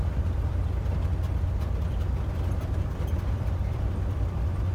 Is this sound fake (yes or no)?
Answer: no